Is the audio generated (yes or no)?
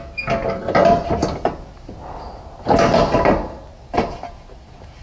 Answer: no